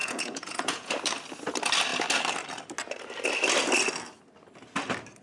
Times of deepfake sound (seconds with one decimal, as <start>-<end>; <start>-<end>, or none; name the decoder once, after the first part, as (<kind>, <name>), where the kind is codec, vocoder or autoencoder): 0.0-0.9 (vocoder, Vocos)